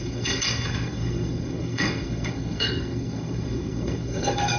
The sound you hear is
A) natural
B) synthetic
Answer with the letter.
B